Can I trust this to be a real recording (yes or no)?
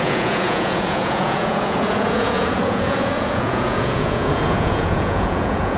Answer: no